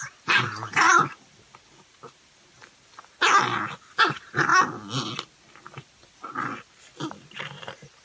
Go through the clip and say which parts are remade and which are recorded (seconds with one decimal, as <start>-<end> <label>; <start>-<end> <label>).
0.0-2.6 remade; 2.6-3.9 recorded; 3.9-4.5 remade; 4.5-7.1 recorded; 7.1-8.0 remade